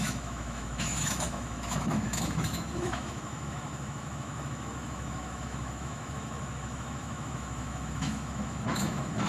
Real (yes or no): no